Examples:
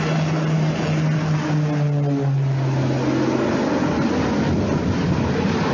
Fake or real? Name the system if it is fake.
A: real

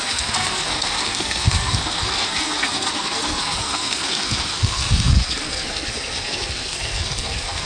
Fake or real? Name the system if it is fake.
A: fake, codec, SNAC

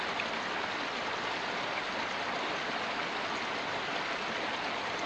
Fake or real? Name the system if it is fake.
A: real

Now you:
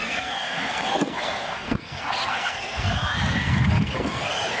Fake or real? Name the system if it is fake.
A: fake, codec, SNAC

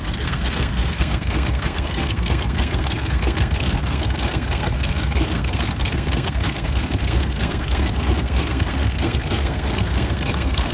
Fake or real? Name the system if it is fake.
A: fake, codec, SNAC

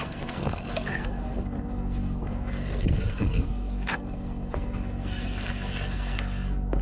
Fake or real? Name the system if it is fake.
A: fake, codec, SNAC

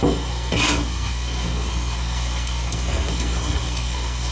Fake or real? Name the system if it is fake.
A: fake, codec, SNAC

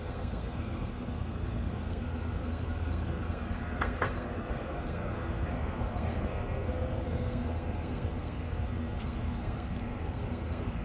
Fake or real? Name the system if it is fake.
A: fake, codec, SNAC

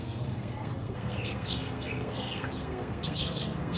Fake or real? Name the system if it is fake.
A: fake, codec, SNAC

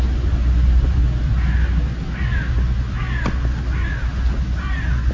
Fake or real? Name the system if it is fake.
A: real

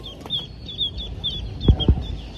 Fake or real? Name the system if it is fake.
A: real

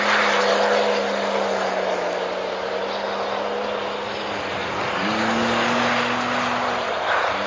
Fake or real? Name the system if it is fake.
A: real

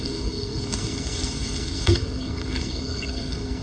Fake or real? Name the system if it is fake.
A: fake, codec, SNAC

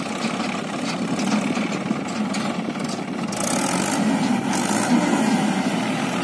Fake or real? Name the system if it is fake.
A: real